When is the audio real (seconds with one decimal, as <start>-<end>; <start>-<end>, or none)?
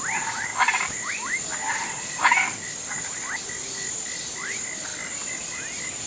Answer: 0.0-0.5; 1.1-1.5; 2.3-6.1